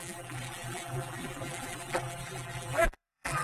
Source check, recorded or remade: remade